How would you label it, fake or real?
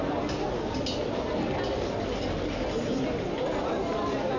real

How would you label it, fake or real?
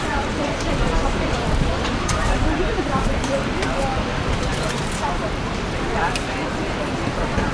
fake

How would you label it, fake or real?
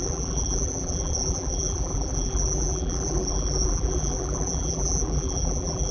fake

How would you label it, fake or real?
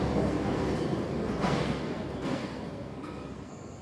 fake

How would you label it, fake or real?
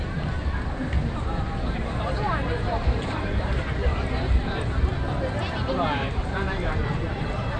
fake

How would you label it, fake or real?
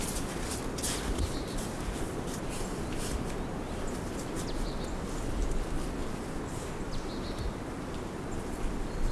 real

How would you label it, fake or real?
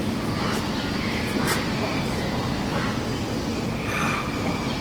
real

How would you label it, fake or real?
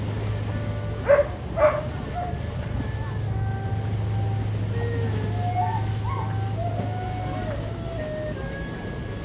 real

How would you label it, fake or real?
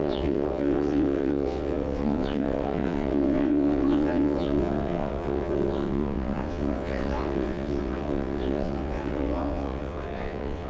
fake